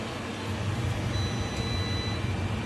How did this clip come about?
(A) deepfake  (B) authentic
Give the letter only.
B